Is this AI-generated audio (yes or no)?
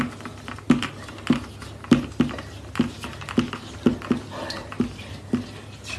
no